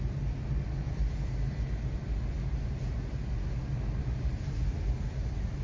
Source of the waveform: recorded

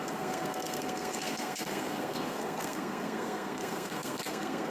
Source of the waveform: remade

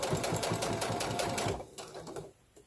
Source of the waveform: remade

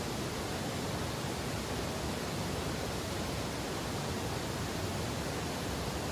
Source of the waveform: recorded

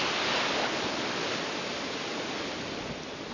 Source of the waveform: recorded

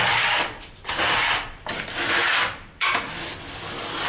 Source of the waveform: recorded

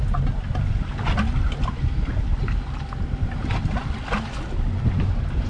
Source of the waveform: recorded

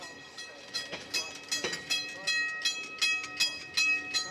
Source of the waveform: recorded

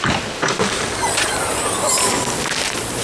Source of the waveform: recorded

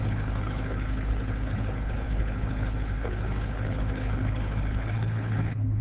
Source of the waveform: remade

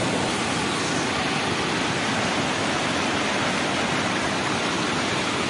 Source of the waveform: recorded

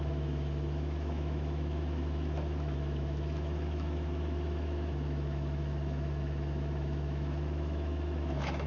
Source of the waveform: remade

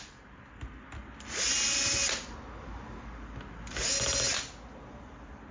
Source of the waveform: recorded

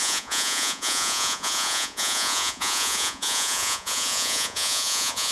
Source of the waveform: remade